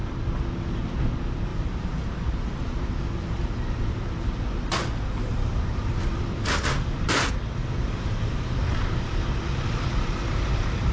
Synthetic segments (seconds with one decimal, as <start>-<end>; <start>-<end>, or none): 1.5-6.3; 7.8-10.9